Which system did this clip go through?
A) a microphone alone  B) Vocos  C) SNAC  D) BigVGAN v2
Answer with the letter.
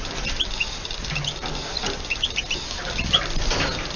A